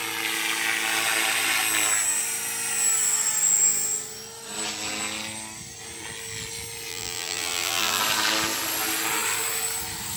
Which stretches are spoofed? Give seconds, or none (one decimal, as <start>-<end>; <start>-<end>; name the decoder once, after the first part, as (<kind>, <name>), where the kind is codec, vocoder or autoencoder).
6.9-8.0 (vocoder, BigVGAN v2)